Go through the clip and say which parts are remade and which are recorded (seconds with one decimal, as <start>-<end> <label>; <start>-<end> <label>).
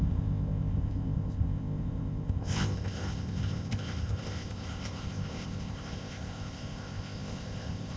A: 0.0-8.0 remade